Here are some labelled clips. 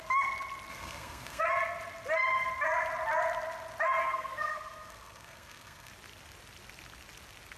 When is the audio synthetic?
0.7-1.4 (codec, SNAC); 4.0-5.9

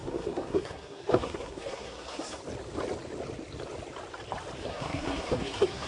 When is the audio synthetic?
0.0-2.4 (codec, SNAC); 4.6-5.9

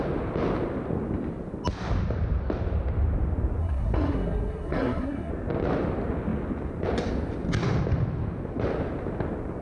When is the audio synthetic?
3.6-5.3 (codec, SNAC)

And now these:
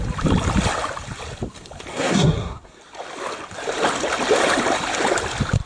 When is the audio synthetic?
1.9-2.8 (codec, SNAC)